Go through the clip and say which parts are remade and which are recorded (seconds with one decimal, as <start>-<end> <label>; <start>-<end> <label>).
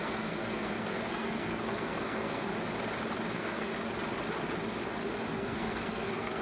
0.0-2.5 remade; 2.5-3.3 recorded; 3.3-3.7 remade; 3.7-5.2 recorded; 5.2-6.4 remade